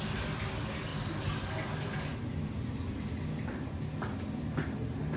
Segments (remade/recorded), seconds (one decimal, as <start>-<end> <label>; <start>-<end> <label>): 0.0-5.2 recorded